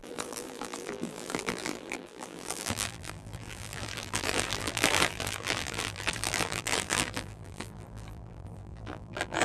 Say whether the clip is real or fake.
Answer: fake